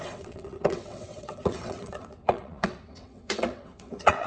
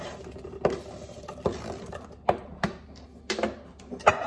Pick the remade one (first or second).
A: first